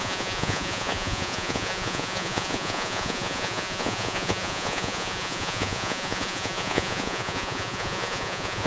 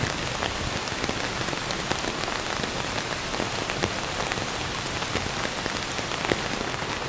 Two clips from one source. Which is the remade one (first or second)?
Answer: first